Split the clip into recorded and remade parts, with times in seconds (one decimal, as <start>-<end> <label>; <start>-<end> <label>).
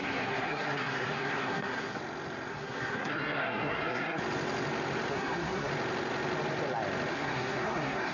0.0-2.0 remade; 2.0-2.5 recorded; 2.5-4.2 remade; 4.2-5.1 recorded; 5.1-5.7 remade; 5.7-7.1 recorded; 7.1-8.1 remade